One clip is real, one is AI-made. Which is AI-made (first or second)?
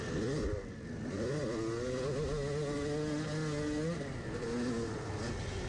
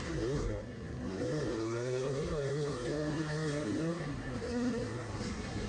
second